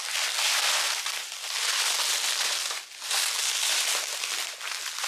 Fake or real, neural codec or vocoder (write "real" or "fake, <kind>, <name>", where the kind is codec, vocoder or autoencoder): real